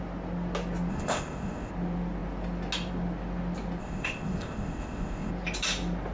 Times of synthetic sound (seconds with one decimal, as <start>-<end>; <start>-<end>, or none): 0.9-1.7; 3.8-5.3